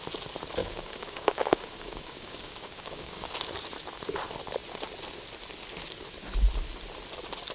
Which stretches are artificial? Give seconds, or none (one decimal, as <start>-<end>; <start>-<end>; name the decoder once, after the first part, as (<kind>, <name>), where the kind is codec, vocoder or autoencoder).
0.6-3.3 (codec, DAC)